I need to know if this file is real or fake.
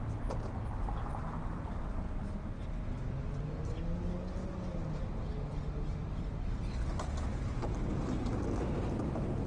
real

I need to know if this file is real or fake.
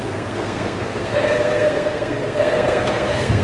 fake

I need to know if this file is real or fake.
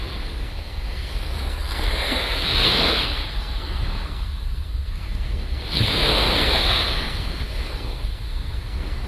fake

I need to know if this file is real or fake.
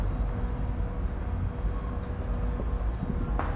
real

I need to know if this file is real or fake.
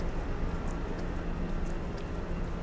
real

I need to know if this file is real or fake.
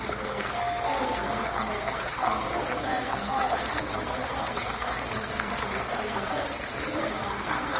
fake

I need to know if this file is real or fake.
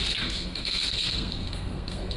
fake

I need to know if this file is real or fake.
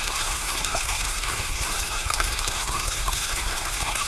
fake